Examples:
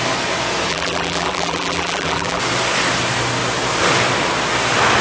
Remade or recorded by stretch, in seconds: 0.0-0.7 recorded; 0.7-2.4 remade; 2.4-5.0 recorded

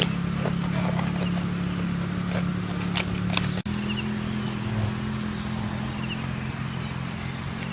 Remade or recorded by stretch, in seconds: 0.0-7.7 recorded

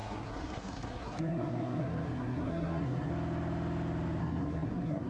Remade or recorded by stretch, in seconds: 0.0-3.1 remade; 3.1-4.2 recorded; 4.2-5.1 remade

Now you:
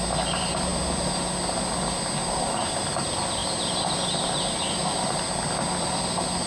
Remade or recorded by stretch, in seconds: 0.0-6.5 recorded

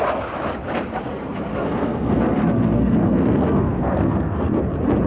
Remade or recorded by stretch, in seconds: 0.0-1.5 recorded; 1.5-4.6 remade; 4.6-5.1 recorded

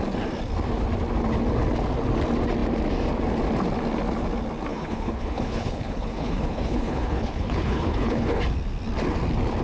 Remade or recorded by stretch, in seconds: 0.0-4.7 recorded; 4.7-8.4 remade; 8.4-9.6 recorded

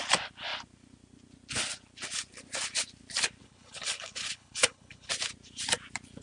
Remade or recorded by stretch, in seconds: 0.0-3.4 recorded; 3.4-5.1 remade; 5.1-6.2 recorded

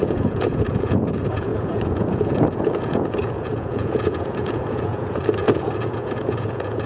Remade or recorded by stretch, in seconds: 0.0-6.9 remade